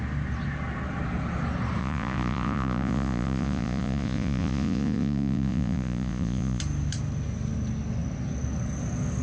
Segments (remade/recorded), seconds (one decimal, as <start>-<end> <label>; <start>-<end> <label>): 0.0-1.8 recorded; 1.8-6.6 remade; 6.6-9.2 recorded